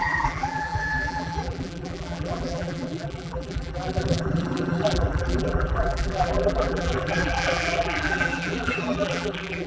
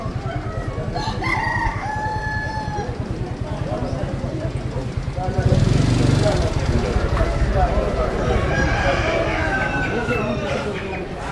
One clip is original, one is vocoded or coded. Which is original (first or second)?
second